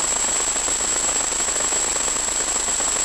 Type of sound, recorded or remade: recorded